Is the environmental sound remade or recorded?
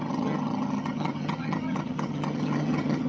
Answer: remade